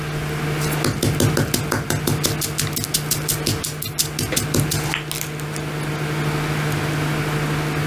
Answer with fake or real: real